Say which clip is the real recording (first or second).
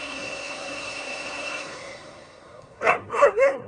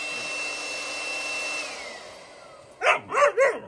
second